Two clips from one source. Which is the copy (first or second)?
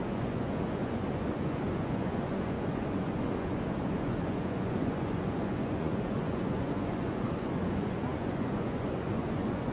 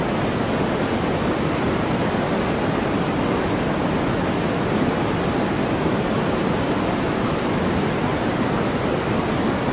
first